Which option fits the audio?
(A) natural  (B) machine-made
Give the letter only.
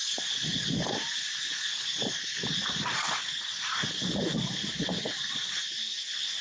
A